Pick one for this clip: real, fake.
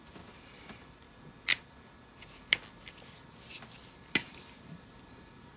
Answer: real